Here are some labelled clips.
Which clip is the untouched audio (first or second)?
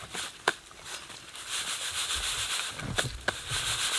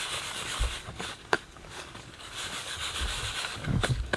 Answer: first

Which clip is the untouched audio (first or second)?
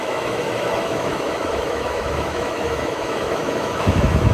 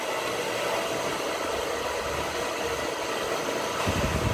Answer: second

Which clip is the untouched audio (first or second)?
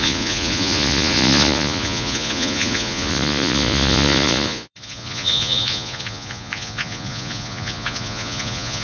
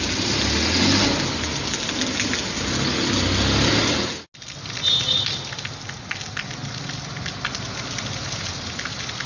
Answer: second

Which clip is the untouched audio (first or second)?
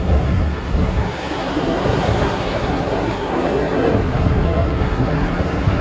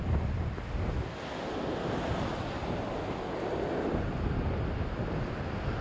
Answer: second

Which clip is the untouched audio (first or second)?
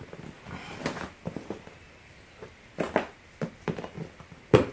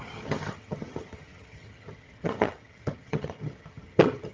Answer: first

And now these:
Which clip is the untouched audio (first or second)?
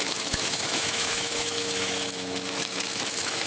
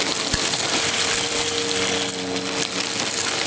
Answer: second